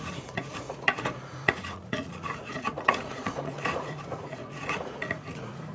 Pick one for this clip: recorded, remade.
remade